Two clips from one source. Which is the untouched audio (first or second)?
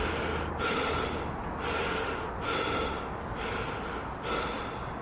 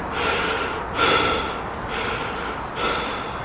first